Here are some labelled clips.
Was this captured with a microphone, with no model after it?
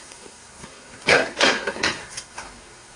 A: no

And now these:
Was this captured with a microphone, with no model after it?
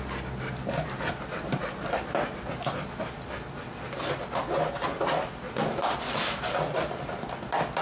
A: yes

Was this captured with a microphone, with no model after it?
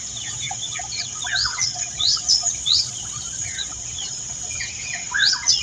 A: no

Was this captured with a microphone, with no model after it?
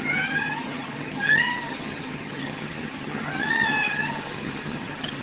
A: no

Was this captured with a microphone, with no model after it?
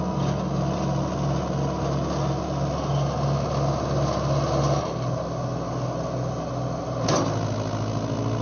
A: yes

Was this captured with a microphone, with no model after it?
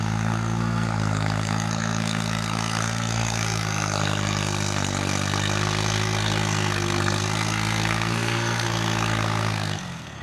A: no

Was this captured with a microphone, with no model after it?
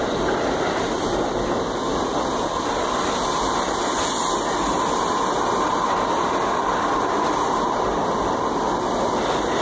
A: yes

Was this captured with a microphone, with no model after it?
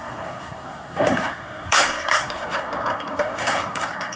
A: no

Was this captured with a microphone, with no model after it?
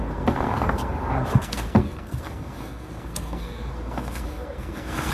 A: no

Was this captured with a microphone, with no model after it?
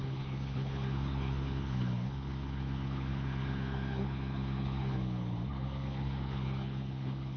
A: no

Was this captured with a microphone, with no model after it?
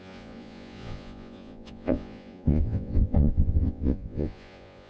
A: no